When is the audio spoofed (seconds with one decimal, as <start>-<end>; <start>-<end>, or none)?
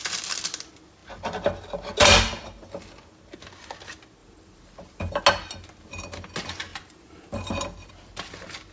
4.2-5.2; 6.7-7.9